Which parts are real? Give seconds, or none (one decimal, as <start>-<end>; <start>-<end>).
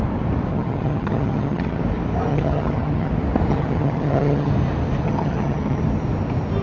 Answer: 0.0-0.5; 1.8-2.3; 3.1-3.5; 4.5-5.0; 5.8-6.6